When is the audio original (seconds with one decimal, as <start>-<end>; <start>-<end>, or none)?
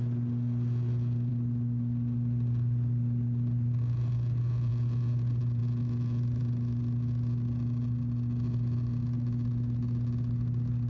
0.0-10.9